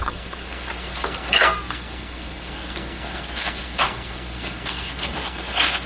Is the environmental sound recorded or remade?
remade